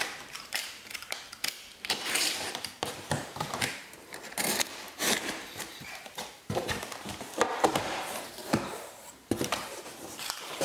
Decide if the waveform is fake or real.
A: fake